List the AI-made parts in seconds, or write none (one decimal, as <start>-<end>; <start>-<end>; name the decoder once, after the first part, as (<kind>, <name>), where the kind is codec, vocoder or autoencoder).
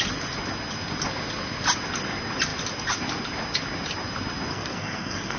4.5-5.4 (codec, SNAC)